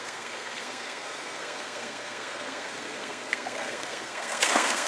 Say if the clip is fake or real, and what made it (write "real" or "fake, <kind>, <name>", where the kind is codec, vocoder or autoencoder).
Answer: fake, codec, SNAC